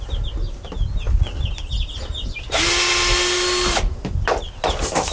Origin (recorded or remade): recorded